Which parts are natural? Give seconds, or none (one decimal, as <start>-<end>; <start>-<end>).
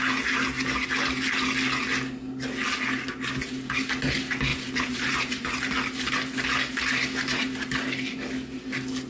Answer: 0.0-4.5; 5.6-9.1